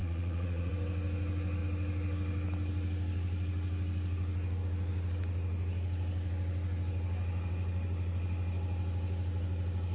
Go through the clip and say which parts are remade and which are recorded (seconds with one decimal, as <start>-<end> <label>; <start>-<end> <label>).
0.0-0.7 remade; 0.7-9.9 recorded